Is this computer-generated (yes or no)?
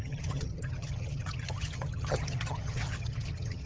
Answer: yes